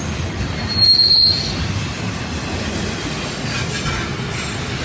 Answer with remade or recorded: recorded